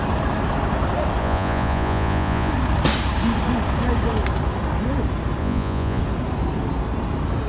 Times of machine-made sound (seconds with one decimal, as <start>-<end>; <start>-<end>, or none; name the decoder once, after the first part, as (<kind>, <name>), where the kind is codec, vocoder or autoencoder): 1.2-2.5 (vocoder, Vocos); 5.4-6.0

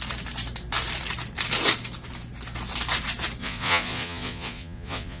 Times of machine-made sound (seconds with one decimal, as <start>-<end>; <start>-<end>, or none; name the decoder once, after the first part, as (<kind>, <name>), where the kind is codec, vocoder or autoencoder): 3.4-5.2 (vocoder, Vocos)

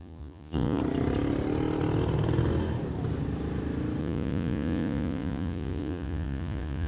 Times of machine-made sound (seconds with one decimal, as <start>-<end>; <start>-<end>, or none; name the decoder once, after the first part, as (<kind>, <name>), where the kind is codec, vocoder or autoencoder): 0.0-0.8 (vocoder, Vocos); 4.0-6.9

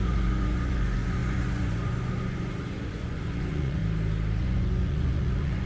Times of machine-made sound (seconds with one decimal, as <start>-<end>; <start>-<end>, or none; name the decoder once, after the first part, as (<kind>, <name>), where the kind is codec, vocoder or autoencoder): 0.0-3.8 (vocoder, Vocos); 4.4-5.7

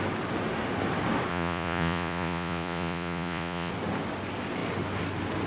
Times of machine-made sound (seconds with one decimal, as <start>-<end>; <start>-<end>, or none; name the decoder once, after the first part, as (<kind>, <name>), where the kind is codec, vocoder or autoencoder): 1.3-3.7 (vocoder, Vocos)

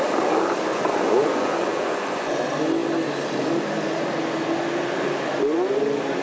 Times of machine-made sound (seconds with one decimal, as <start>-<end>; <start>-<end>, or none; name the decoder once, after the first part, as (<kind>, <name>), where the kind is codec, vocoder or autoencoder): 0.7-2.4 (vocoder, Vocos)